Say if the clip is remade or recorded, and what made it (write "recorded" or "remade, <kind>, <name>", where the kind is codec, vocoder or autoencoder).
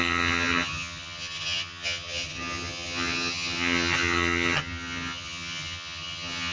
remade, vocoder, HiFi-GAN